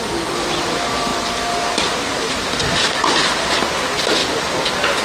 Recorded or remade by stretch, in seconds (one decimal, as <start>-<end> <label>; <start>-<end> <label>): 0.0-5.0 recorded